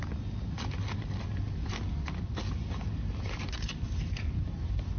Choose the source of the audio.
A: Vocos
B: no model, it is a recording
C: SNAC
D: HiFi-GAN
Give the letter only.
B